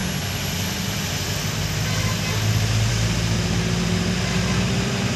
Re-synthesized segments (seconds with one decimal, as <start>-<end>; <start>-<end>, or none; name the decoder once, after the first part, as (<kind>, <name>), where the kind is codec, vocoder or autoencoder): none